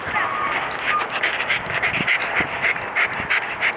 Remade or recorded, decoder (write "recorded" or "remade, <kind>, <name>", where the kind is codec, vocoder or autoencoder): recorded